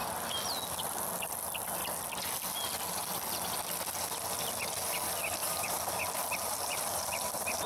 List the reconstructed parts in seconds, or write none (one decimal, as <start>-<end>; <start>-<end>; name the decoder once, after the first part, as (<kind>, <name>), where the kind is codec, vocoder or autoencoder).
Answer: 5.4-7.7 (vocoder, BigVGAN v2)

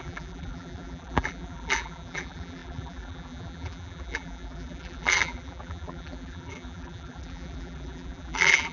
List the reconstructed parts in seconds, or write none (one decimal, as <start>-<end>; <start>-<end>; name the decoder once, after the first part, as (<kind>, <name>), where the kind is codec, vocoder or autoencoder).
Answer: 0.0-8.7 (vocoder, BigVGAN v2)

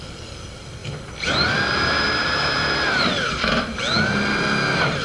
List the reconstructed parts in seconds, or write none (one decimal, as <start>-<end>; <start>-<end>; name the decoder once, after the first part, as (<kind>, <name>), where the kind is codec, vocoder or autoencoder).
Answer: 0.8-3.8 (vocoder, BigVGAN v2)

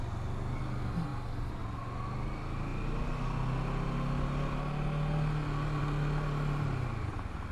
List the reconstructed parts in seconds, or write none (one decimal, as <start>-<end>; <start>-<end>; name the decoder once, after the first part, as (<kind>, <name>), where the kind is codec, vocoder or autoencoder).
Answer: 1.1-1.6 (vocoder, BigVGAN v2)

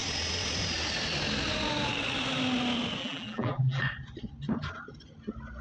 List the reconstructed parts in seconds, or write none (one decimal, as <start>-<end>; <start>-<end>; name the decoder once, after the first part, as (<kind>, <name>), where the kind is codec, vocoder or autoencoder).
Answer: 3.0-3.8 (vocoder, BigVGAN v2)

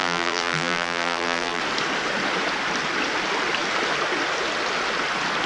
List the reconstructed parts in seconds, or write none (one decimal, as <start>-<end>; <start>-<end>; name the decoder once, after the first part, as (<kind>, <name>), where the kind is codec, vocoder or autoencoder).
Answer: 0.0-1.6 (vocoder, BigVGAN v2)

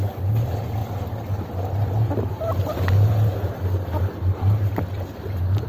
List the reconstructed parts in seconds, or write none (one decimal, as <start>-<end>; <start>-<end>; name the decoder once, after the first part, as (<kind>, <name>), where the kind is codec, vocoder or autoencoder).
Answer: none